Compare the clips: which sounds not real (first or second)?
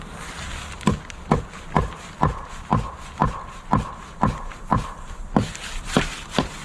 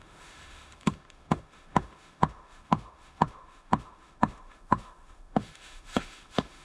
second